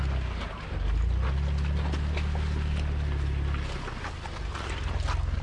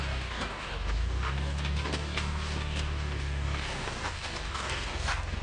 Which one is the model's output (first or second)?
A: second